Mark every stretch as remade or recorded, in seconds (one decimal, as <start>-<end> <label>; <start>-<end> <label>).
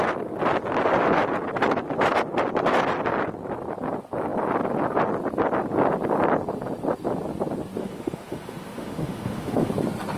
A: 0.0-7.8 recorded; 7.8-9.7 remade; 9.7-10.2 recorded